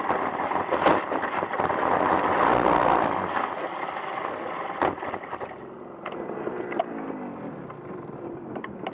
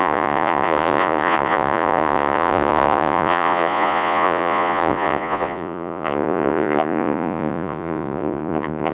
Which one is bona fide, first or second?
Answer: first